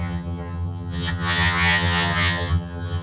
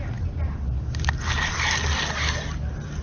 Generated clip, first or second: first